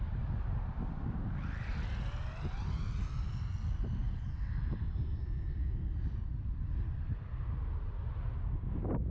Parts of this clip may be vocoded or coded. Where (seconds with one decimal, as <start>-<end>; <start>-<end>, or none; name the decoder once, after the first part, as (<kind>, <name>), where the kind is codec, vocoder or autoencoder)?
none